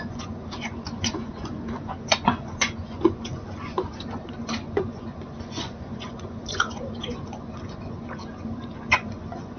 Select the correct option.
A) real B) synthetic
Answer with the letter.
B